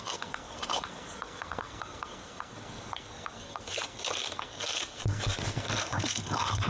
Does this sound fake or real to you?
fake